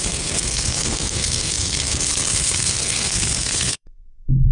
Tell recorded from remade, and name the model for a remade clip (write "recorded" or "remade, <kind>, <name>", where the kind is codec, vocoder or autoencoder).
remade, codec, SNAC